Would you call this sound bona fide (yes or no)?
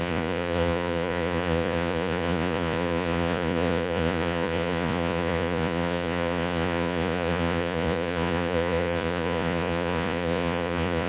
no